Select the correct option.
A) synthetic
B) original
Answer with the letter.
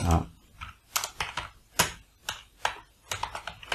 B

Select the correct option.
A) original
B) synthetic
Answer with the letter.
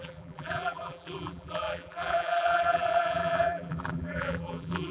B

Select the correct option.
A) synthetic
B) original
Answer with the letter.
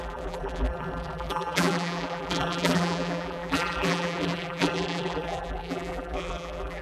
A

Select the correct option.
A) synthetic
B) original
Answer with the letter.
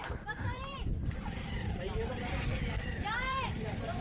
A